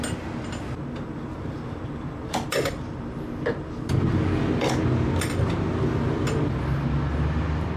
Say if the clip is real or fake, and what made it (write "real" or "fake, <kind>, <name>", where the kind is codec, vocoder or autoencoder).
real